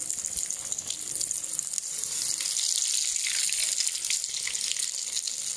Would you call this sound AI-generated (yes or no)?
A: no